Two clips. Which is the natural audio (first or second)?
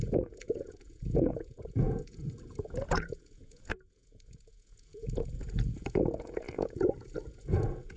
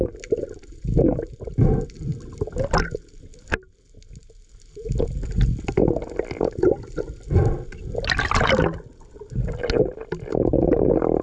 second